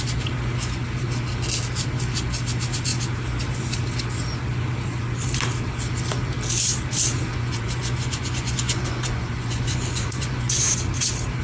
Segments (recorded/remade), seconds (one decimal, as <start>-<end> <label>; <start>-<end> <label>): 0.0-7.3 recorded; 7.3-10.7 remade; 10.7-11.4 recorded